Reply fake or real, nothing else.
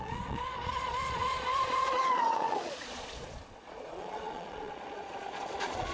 fake